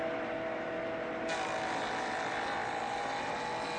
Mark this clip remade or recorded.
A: recorded